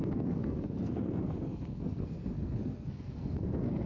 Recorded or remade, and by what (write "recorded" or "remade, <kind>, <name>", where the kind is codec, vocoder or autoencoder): remade, codec, SNAC